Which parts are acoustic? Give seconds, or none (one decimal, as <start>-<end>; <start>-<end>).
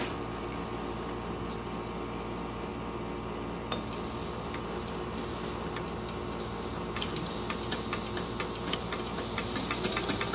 0.0-10.3